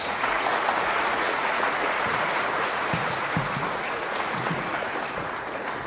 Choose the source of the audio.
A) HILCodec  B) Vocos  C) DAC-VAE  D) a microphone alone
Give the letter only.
B